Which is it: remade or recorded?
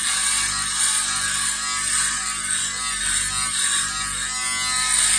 recorded